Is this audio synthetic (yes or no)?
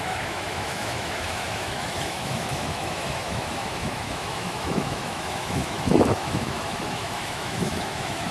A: yes